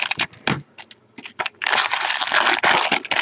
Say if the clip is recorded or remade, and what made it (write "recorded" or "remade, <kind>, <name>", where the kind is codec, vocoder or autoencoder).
recorded